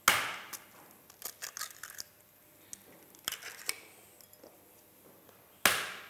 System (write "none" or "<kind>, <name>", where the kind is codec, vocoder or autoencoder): none